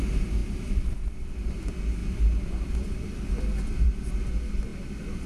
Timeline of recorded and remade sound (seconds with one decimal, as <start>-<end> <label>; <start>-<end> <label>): 0.0-0.4 recorded; 0.4-1.5 remade; 1.5-2.0 recorded; 2.0-4.1 remade; 4.1-4.7 recorded; 4.7-5.3 remade